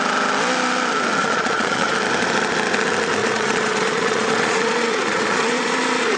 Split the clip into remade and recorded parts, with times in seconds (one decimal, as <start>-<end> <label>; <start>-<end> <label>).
0.0-1.2 recorded; 1.2-1.9 remade; 1.9-3.2 recorded; 3.2-6.2 remade